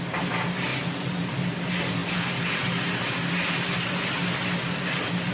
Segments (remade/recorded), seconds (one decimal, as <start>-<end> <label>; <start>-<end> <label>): 0.0-5.3 recorded